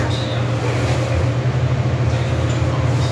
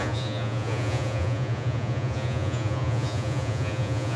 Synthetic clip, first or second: second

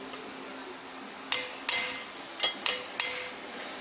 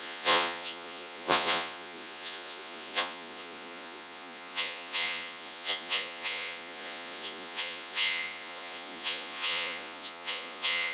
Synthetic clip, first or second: second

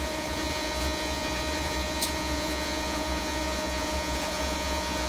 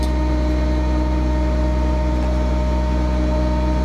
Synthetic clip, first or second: first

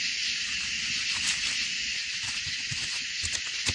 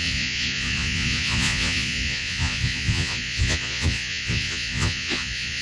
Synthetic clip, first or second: second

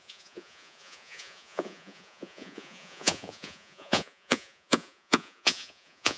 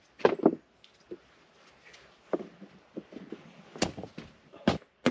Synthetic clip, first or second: first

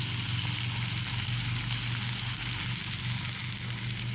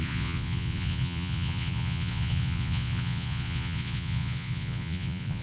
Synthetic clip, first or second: second